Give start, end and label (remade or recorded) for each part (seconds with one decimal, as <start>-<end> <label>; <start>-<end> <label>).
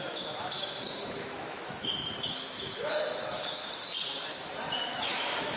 0.0-3.6 remade; 3.6-4.8 recorded; 4.8-5.6 remade